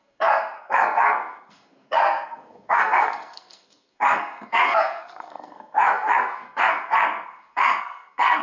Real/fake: fake